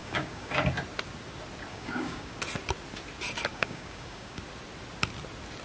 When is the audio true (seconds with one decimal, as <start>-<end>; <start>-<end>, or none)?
0.5-1.7; 2.4-3.5; 4.4-5.6